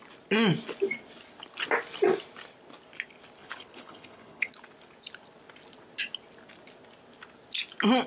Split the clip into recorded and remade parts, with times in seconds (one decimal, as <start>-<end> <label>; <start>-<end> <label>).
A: 0.0-3.4 recorded; 3.4-4.5 remade; 4.5-8.1 recorded